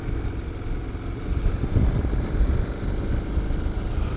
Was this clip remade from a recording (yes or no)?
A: no